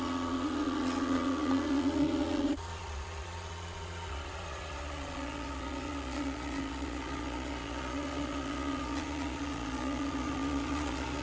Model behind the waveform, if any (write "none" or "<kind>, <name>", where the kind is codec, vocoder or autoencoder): vocoder, Vocos